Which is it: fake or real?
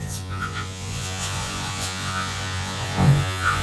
fake